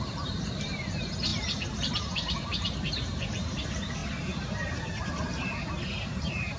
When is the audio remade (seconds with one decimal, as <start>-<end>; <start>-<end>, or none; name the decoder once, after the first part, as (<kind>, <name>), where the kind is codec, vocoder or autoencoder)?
0.0-6.6 (vocoder, BigVGAN v2)